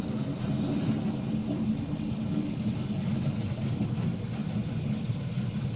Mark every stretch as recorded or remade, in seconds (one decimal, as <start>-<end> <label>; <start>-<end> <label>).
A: 0.0-5.8 recorded